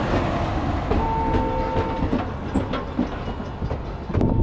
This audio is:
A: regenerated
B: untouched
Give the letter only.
B